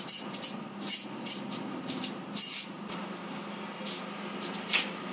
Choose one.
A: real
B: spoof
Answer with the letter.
A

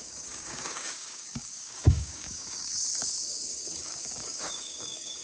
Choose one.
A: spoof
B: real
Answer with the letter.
A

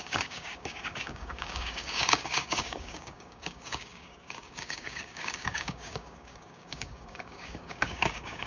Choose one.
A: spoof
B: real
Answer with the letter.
A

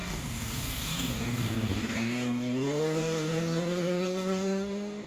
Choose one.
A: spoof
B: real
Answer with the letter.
A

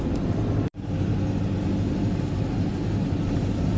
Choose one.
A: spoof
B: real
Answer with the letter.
B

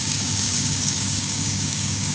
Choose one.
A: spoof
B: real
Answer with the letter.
A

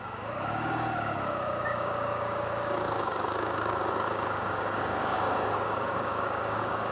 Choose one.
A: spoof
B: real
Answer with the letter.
A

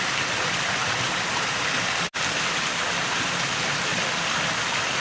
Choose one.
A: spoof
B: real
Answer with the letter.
B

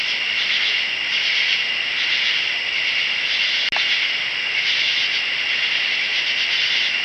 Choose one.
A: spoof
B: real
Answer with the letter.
B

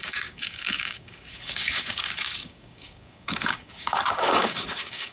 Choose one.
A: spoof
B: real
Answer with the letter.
A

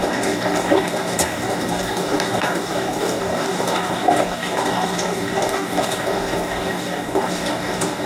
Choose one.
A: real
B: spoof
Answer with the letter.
B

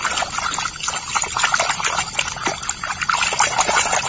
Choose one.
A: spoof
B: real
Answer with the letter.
B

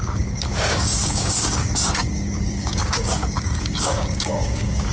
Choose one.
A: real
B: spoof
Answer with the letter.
B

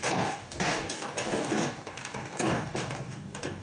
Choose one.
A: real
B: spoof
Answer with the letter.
B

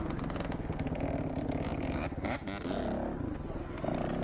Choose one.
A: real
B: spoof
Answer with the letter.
A